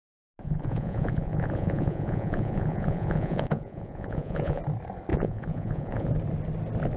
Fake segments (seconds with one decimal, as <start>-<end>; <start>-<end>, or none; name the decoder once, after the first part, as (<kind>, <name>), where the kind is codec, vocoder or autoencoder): 0.4-4.6 (vocoder, Vocos); 5.1-6.1